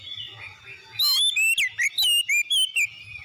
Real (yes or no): yes